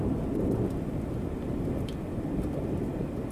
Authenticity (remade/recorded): recorded